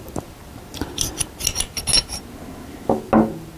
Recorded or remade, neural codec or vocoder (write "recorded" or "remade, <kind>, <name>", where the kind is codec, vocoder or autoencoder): recorded